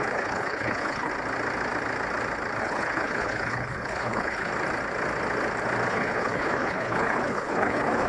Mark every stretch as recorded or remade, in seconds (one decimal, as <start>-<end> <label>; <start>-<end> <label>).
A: 0.0-1.1 remade; 1.1-2.6 recorded; 2.6-4.5 remade; 4.5-5.9 recorded; 5.9-8.1 remade